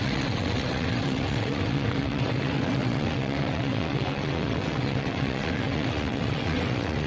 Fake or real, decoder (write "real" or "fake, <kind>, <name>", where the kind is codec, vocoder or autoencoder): fake, vocoder, WaveNeXt